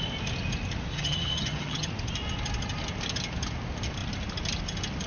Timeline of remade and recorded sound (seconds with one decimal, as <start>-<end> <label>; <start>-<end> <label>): 0.0-0.9 recorded; 0.9-1.9 remade; 1.9-5.1 recorded